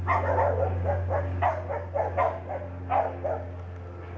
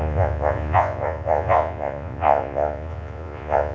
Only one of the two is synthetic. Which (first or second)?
second